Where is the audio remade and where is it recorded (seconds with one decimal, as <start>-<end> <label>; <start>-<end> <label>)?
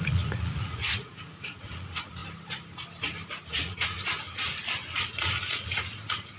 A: 0.0-2.2 remade; 2.2-3.5 recorded; 3.5-4.6 remade; 4.6-5.1 recorded; 5.1-6.4 remade